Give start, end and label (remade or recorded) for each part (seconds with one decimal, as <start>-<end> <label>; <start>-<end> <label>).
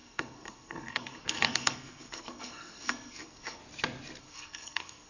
0.0-3.6 remade; 3.6-4.2 recorded; 4.2-5.1 remade